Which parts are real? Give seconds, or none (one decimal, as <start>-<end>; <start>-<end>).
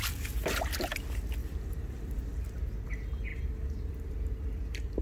0.0-1.4; 2.4-3.3; 3.9-5.0